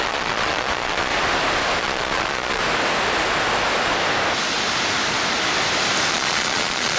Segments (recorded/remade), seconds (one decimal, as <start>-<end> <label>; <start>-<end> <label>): 0.0-1.1 remade; 1.1-1.8 recorded; 1.8-2.6 remade; 2.6-6.1 recorded; 6.1-7.0 remade